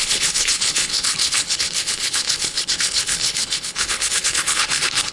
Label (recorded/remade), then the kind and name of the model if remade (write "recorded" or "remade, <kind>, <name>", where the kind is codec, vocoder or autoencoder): remade, codec, HILCodec